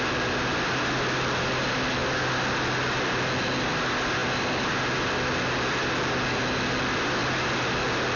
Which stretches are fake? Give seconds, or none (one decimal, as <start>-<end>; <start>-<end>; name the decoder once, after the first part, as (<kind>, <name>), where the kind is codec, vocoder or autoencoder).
none